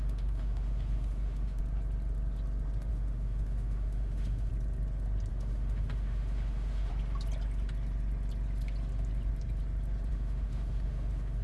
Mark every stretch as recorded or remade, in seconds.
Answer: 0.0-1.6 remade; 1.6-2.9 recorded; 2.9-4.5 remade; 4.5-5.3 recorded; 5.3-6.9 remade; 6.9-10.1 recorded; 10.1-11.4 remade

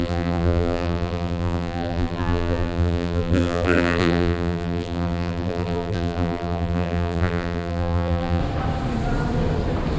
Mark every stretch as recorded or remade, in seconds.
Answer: 0.0-8.4 remade; 8.4-10.0 recorded

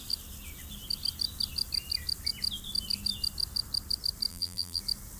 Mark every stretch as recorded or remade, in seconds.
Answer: 0.0-4.3 recorded; 4.3-4.8 remade; 4.8-5.2 recorded

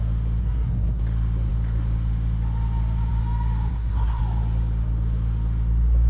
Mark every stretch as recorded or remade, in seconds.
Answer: 0.0-0.4 recorded; 0.4-1.0 remade; 1.0-3.7 recorded; 3.7-4.2 remade; 4.2-6.1 recorded

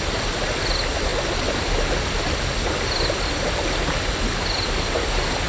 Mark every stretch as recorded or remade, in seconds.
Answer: 0.0-5.5 recorded

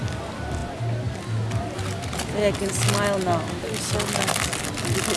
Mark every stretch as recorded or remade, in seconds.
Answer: 0.0-5.2 recorded